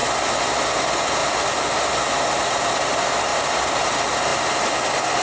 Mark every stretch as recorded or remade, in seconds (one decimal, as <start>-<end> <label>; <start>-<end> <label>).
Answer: 0.0-1.2 recorded; 1.2-2.7 remade; 2.7-3.3 recorded; 3.3-3.8 remade; 3.8-5.2 recorded